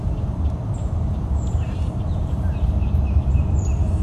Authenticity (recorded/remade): remade